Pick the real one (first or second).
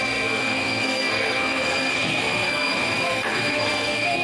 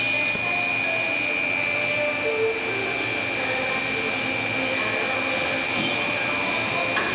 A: second